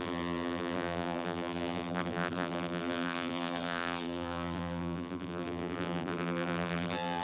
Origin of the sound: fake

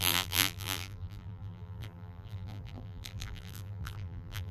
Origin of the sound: fake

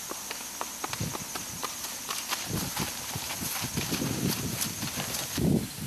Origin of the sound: real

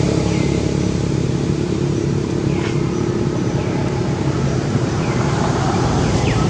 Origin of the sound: fake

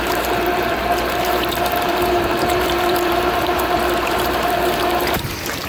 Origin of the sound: fake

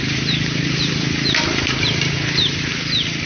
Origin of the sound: fake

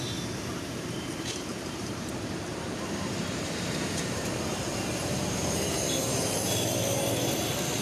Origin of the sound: fake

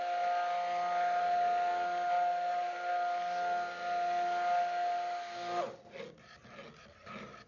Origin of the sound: real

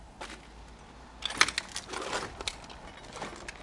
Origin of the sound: real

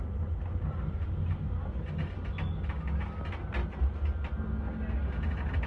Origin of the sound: real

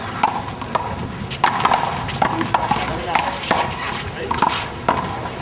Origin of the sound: real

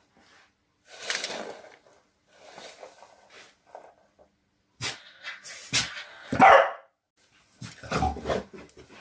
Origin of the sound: real